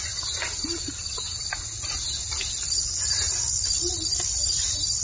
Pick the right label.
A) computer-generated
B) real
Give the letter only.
B